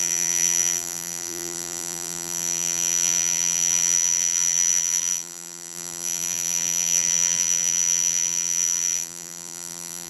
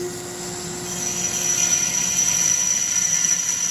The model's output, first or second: first